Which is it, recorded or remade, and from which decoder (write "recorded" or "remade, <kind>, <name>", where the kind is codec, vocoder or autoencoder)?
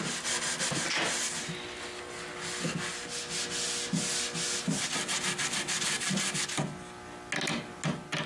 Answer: recorded